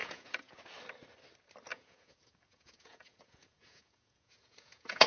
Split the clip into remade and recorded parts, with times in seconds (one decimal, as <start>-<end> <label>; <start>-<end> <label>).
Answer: 0.0-0.5 remade; 0.5-1.7 recorded; 1.7-5.1 remade